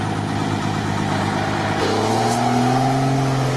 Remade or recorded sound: recorded